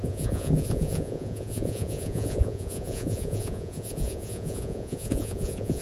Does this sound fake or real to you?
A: fake